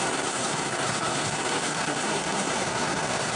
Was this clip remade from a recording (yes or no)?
yes